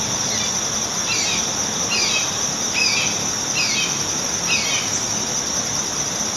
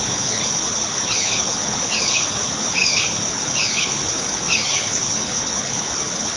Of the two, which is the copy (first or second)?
second